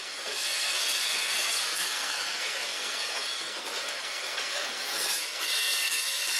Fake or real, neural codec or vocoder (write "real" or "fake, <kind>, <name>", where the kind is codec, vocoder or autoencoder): fake, codec, SNAC